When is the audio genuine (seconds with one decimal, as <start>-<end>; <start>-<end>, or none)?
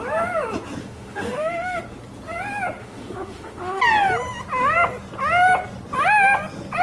0.0-0.8; 1.8-2.8; 3.8-6.8